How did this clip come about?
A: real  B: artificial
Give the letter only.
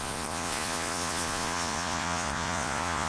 B